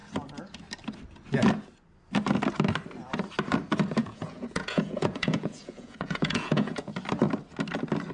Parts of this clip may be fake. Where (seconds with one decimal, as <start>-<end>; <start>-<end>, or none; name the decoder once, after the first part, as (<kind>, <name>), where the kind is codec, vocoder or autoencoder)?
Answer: 4.0-6.9 (vocoder, Vocos)